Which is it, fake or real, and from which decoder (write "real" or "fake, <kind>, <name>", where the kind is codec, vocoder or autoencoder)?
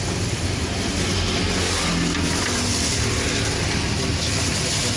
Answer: real